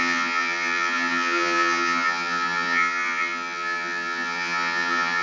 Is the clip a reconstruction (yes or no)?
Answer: yes